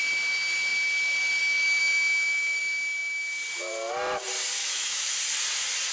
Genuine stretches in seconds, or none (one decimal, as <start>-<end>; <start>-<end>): 0.0-1.8; 2.6-4.6; 5.2-5.9